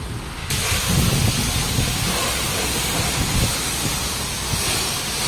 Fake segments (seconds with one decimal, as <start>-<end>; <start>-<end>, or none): none